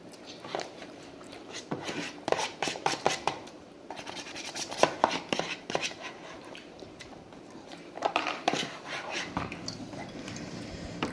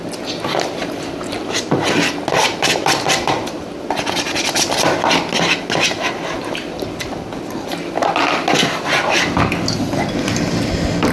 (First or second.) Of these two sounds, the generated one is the first